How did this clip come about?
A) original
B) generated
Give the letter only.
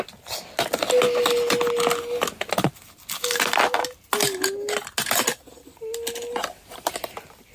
A